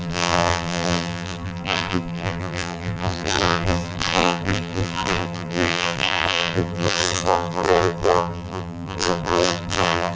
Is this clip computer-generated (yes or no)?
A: yes